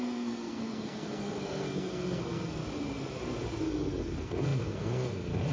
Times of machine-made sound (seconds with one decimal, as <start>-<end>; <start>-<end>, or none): 0.0-2.6; 4.0-5.5